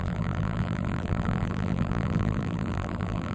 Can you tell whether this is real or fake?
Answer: fake